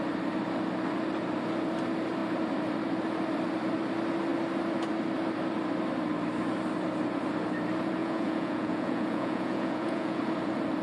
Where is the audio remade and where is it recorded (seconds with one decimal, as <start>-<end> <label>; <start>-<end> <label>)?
0.0-8.0 recorded; 8.0-10.2 remade; 10.2-10.8 recorded